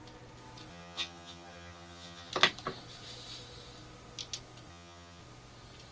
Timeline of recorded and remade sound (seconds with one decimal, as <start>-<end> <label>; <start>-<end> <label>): 0.0-0.7 recorded; 0.7-2.3 remade; 2.3-4.7 recorded; 4.7-5.2 remade; 5.2-5.9 recorded